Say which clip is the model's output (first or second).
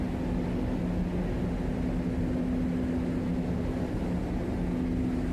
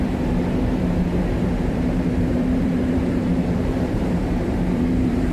second